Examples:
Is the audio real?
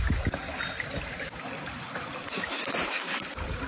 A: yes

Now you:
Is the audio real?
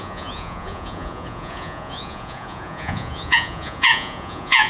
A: no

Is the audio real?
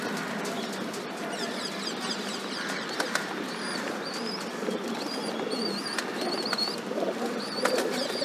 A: yes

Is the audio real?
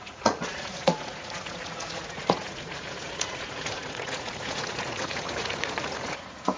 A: no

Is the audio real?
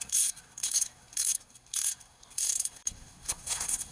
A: no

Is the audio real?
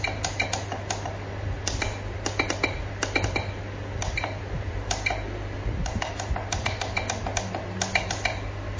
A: yes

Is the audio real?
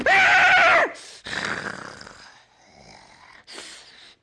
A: yes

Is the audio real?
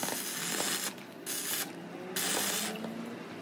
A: yes